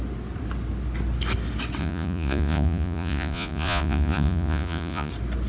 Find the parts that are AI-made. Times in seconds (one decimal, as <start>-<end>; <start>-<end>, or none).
1.8-5.1